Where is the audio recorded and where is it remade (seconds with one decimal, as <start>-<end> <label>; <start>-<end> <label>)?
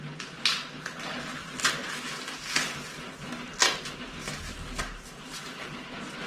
0.0-6.3 recorded